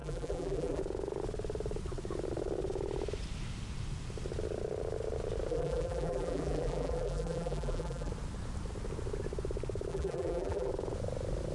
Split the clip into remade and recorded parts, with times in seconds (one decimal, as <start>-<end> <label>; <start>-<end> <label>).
0.0-0.8 remade; 0.8-5.5 recorded; 5.5-8.1 remade; 8.1-9.9 recorded; 9.9-10.7 remade; 10.7-11.5 recorded